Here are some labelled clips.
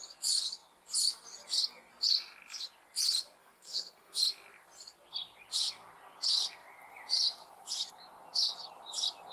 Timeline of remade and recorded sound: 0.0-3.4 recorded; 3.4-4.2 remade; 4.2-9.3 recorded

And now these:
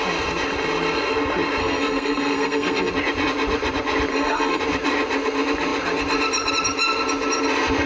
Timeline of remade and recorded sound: 0.0-1.6 recorded; 1.6-2.9 remade; 2.9-4.1 recorded; 4.1-4.6 remade; 4.6-7.9 recorded

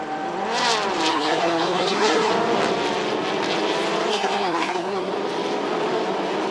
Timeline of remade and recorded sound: 0.0-1.1 recorded; 1.1-2.3 remade; 2.3-4.1 recorded; 4.1-5.1 remade; 5.1-6.5 recorded

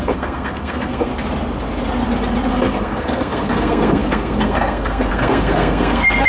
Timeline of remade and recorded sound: 0.0-1.1 remade; 1.1-2.5 recorded; 2.5-6.3 remade